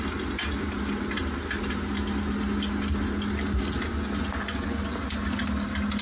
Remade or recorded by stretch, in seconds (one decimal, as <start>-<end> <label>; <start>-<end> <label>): 0.0-6.0 recorded